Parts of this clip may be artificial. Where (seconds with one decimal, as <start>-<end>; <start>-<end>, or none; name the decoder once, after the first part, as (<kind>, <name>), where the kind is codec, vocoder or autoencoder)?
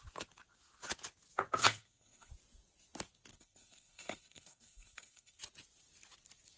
1.6-2.3 (codec, SNAC); 3.3-5.4